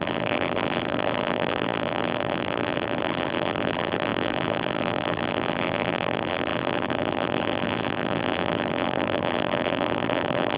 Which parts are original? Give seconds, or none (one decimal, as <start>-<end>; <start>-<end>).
none

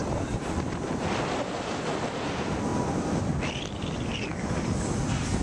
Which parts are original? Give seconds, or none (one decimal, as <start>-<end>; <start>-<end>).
2.7-3.2

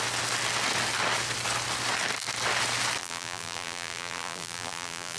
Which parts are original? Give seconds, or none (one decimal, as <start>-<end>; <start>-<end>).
0.0-3.0